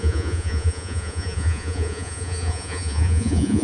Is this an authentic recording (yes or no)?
no